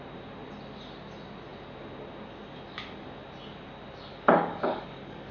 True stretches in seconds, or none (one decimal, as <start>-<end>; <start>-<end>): 0.0-4.1